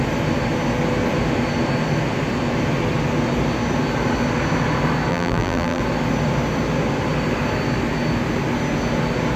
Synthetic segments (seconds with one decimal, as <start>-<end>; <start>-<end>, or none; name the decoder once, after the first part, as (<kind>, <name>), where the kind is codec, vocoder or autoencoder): 5.1-5.8 (vocoder, BigVGAN v2)